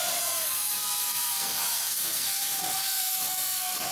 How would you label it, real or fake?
fake